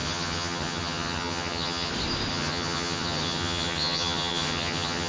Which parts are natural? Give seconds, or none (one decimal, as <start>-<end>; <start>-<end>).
1.9-2.3